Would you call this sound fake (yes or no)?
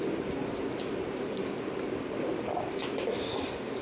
no